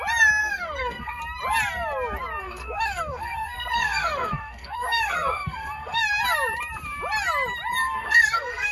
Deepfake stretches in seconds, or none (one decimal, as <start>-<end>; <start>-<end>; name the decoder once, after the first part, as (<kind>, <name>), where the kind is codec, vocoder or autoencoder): 0.4-1.2 (codec, SNAC); 2.4-6.0; 7.8-8.7